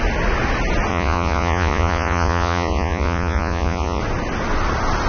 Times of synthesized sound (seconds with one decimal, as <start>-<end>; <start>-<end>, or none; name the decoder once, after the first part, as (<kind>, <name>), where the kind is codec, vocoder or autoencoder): 0.9-4.0 (vocoder, Vocos)